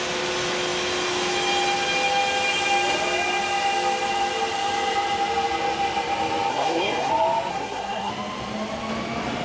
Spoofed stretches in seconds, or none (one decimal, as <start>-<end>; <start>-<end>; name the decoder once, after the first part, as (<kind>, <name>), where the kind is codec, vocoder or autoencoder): 6.5-7.1 (codec, SNAC); 7.5-8.1